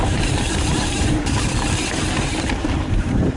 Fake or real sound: fake